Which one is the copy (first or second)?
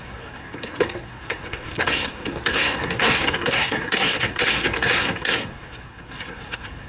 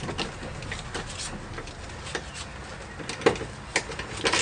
first